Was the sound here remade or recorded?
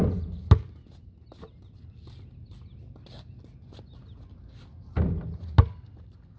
recorded